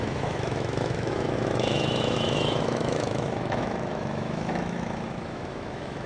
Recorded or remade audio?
remade